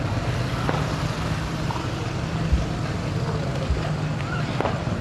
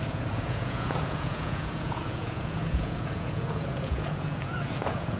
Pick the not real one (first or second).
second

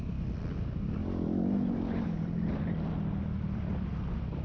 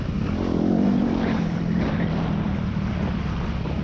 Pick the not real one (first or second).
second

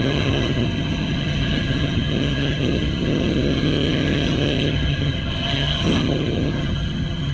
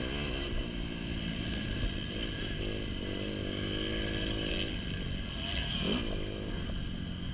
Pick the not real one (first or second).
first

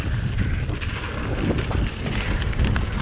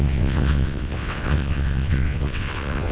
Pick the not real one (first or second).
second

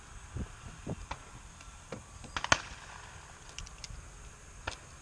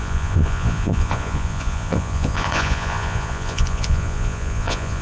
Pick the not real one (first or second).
second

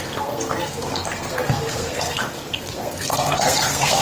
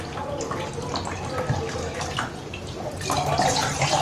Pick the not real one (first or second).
first